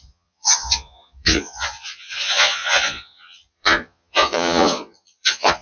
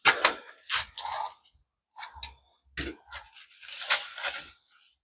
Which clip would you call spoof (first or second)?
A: first